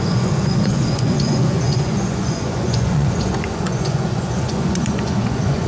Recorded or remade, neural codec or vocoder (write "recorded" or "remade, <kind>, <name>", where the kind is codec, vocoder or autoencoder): remade, vocoder, Vocos